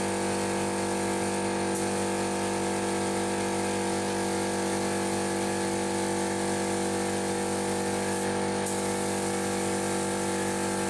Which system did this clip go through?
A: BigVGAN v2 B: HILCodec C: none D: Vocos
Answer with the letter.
C